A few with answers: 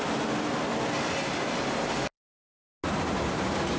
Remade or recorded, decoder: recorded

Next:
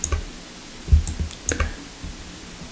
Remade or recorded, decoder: recorded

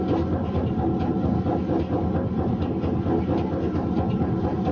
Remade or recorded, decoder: recorded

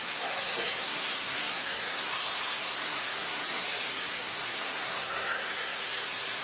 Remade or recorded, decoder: remade, codec, SNAC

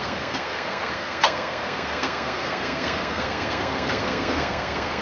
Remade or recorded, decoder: remade, codec, SNAC